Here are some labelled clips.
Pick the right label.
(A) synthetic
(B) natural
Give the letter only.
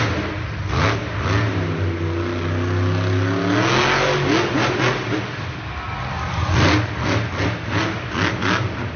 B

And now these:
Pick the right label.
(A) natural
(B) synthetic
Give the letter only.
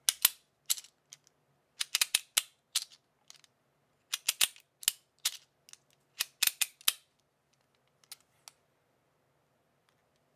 A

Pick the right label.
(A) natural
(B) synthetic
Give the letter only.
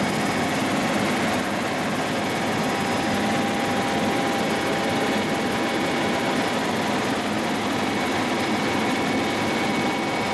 A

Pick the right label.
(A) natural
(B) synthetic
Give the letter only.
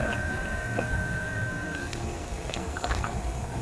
B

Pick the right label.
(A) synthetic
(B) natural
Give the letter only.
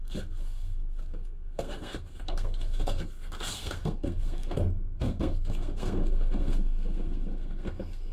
A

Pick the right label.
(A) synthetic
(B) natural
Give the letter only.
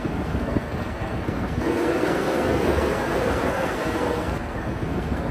A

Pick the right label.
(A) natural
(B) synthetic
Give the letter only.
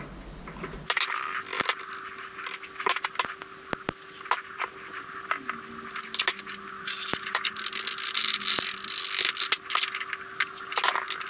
A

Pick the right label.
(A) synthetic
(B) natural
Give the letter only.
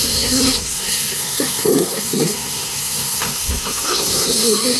A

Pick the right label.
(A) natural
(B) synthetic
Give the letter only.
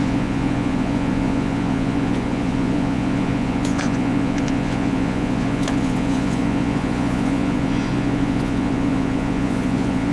B